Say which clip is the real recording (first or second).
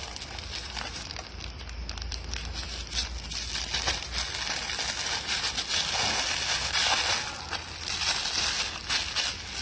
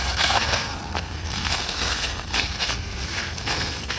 first